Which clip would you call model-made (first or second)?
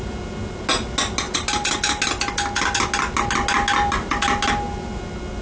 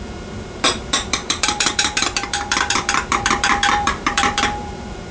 second